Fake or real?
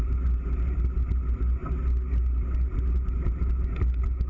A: real